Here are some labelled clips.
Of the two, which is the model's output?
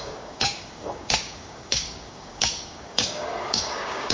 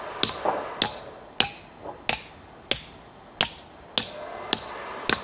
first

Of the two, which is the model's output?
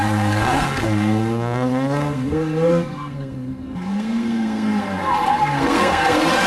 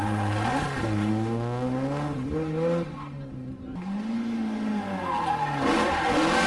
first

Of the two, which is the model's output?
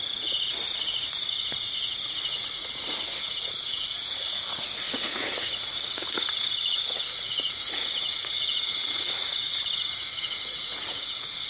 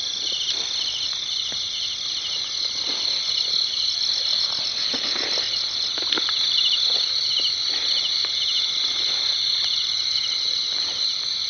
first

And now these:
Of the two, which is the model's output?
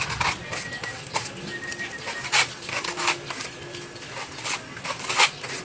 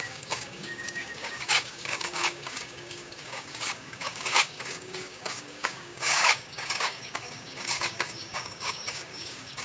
second